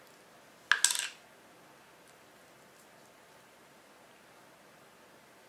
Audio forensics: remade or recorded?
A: recorded